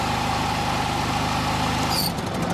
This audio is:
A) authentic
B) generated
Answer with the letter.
A